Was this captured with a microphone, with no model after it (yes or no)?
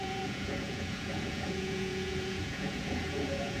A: no